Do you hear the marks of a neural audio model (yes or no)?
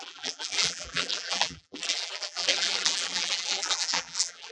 yes